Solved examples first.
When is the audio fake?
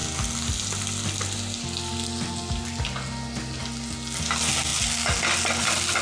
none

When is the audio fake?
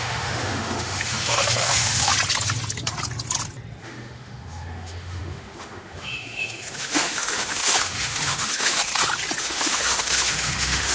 0.0-2.1 (autoencoder, DAC-VAE); 3.8-8.9; 9.4-10.9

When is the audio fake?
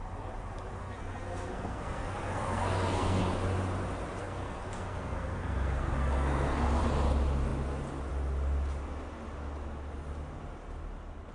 0.8-3.2 (codec, SNAC); 4.2-6.8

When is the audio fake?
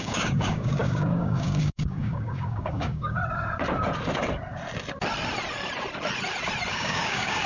0.0-3.2 (codec, DAC); 6.7-7.5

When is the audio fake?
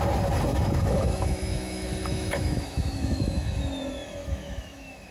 0.5-3.6 (autoencoder, DAC-VAE); 4.2-5.1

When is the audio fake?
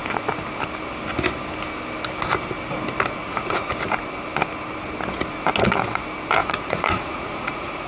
3.2-3.7 (vocoder, Vocos); 6.4-7.9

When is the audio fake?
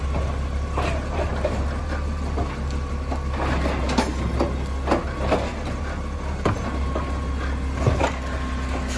none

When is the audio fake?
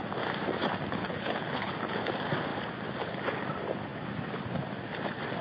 1.0-1.7 (codec, HILCodec)